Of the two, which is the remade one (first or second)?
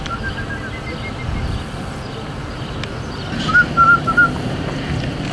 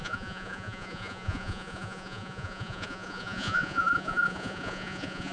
second